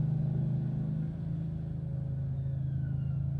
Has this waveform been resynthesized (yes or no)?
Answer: no